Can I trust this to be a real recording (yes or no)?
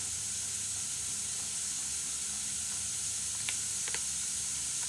yes